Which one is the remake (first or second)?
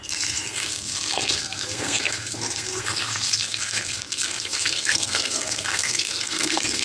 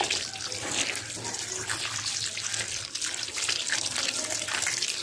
first